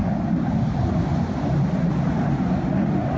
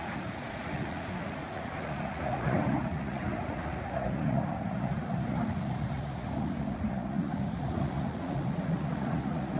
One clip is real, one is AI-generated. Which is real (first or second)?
first